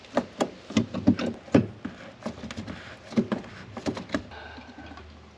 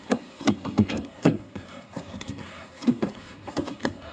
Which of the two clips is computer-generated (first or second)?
second